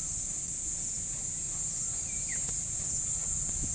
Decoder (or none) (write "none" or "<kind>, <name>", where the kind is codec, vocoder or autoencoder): none